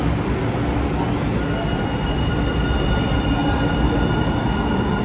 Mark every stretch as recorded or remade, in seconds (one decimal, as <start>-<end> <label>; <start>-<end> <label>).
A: 0.0-5.0 recorded